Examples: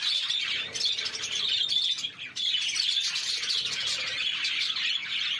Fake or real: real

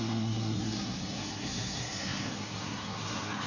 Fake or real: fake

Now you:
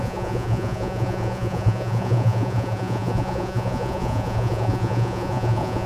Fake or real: fake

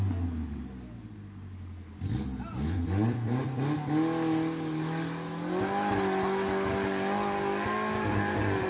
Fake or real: real